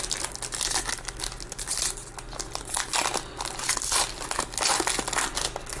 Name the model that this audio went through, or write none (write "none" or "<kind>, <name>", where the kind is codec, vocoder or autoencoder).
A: none